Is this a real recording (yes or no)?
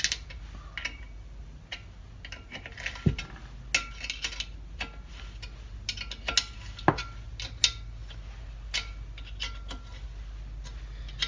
yes